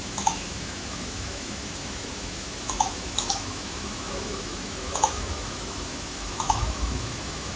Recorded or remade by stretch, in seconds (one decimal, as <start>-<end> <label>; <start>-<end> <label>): 0.0-7.6 remade